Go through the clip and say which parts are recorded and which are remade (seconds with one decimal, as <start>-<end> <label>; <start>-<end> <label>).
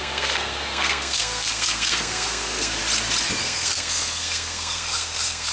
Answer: 0.0-2.8 remade; 2.8-3.4 recorded; 3.4-5.5 remade